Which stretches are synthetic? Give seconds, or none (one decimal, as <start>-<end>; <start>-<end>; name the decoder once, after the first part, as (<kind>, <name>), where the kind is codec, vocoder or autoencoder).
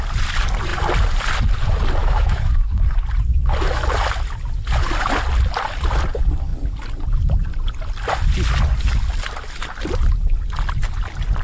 2.0-2.8 (autoencoder, DAC-VAE)